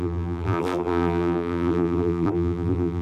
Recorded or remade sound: remade